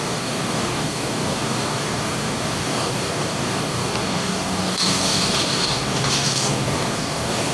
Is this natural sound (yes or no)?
no